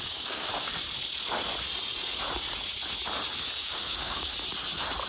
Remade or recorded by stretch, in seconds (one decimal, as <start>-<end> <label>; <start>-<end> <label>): 0.0-0.5 remade; 0.5-3.6 recorded; 3.6-4.3 remade; 4.3-5.1 recorded